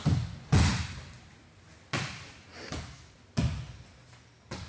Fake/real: real